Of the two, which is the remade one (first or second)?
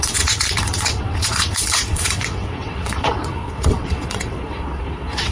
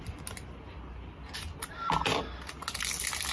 first